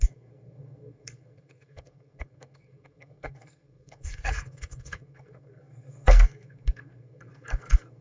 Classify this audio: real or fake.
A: fake